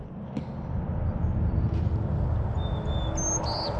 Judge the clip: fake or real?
real